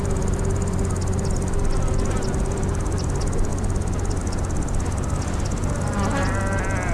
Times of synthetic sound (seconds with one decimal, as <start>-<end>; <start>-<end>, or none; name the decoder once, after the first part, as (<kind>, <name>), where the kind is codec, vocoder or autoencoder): none

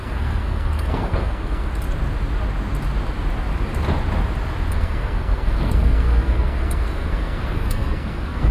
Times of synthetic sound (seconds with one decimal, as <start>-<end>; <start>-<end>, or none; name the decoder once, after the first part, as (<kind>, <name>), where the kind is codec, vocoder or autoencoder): 0.0-1.7 (codec, SNAC); 4.7-8.5